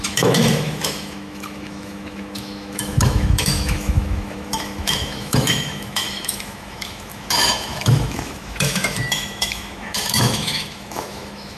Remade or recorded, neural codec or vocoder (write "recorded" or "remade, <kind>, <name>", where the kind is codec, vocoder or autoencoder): remade, autoencoder, DAC-VAE